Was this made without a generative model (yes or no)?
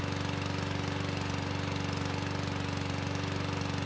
yes